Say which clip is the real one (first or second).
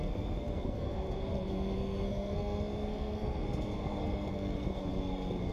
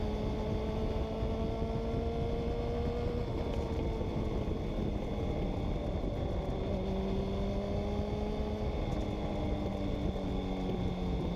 second